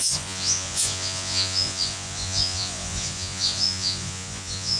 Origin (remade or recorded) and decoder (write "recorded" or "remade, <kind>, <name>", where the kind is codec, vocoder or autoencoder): remade, vocoder, Vocos